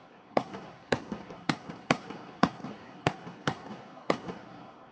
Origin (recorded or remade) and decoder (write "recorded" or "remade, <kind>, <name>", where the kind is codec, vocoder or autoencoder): remade, codec, SNAC